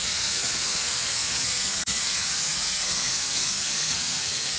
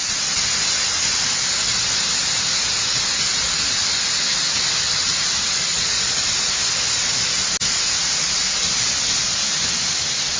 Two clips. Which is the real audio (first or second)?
second